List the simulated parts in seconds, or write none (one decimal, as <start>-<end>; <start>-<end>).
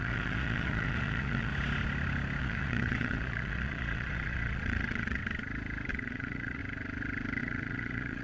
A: 0.0-1.5; 2.4-5.2; 5.9-6.6; 7.4-8.2